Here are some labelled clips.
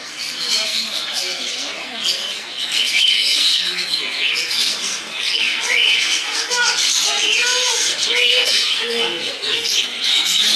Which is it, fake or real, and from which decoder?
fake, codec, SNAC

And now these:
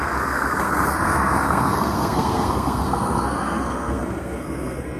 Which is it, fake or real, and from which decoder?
fake, codec, SNAC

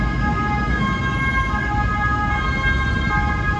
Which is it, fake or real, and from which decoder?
real